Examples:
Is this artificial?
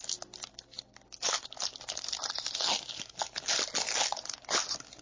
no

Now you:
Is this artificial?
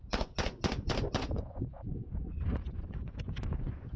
yes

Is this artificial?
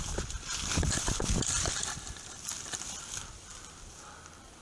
yes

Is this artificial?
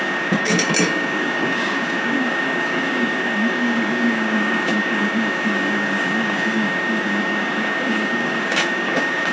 yes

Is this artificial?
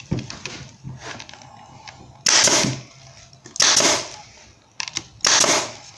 no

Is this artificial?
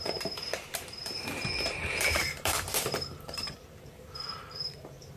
yes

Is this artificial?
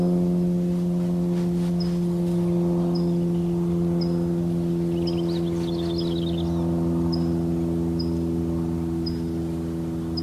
no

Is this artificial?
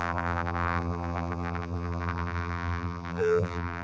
yes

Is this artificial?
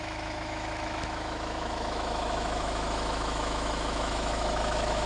yes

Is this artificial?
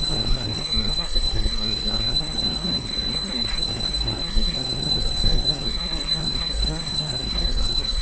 yes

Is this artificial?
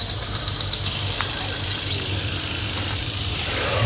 yes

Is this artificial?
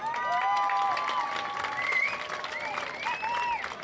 no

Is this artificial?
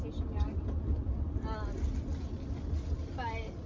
no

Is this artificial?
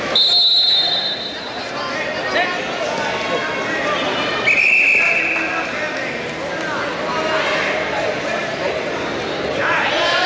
no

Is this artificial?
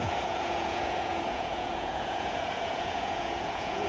yes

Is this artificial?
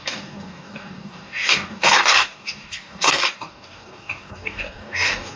yes